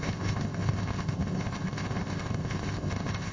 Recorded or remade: remade